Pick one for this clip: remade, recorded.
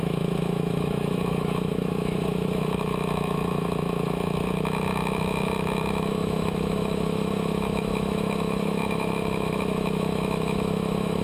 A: remade